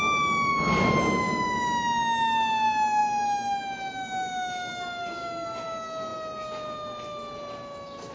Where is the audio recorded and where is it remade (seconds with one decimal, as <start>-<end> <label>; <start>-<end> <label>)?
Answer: 0.0-8.1 recorded